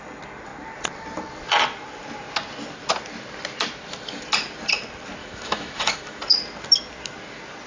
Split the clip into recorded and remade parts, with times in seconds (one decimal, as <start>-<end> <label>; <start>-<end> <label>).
0.0-5.2 recorded; 5.2-6.2 remade; 6.2-7.7 recorded